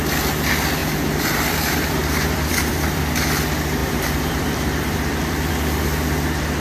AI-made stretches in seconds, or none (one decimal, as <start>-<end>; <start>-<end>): 0.8-3.0; 3.8-5.5